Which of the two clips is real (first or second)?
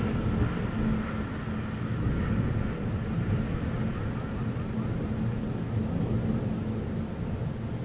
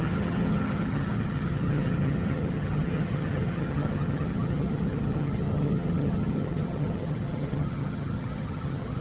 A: first